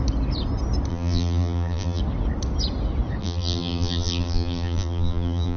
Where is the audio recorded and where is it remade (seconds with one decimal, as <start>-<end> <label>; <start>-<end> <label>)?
0.0-0.9 recorded; 0.9-2.0 remade; 2.0-3.2 recorded; 3.2-5.6 remade